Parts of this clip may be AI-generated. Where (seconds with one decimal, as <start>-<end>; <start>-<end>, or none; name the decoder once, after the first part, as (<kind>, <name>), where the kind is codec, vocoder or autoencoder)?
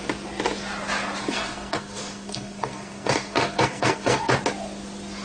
1.2-4.3 (codec, SNAC)